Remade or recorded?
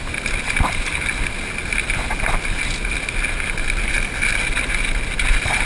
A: recorded